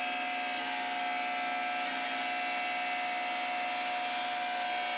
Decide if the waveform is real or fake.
real